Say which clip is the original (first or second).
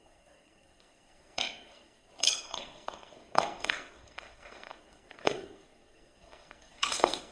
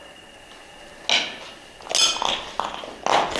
second